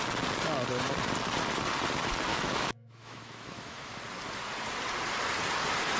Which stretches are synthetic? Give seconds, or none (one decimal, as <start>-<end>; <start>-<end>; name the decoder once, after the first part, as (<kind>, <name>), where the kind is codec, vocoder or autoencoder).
2.3-4.0 (autoencoder, DAC-VAE)